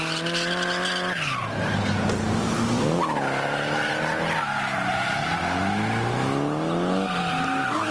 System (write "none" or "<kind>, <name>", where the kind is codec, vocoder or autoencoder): none